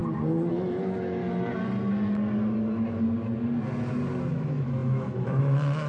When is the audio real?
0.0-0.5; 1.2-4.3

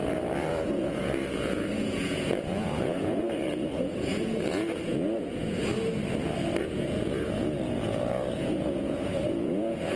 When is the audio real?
0.0-0.5; 5.7-6.6